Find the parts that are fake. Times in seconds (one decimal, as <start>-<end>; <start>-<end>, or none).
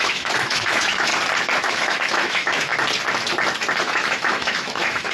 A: 0.0-1.1; 1.7-2.7; 3.8-5.1